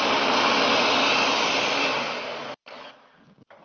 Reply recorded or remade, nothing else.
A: recorded